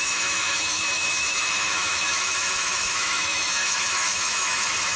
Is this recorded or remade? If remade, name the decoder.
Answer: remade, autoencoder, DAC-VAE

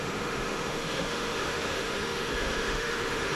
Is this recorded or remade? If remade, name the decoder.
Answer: remade, autoencoder, DAC-VAE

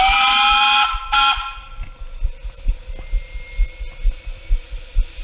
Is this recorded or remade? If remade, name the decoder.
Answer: recorded